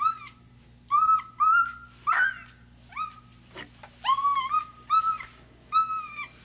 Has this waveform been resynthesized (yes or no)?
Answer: no